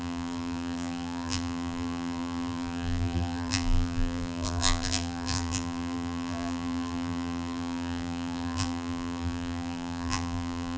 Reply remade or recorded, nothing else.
remade